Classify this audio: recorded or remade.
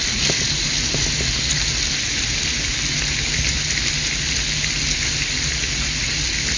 recorded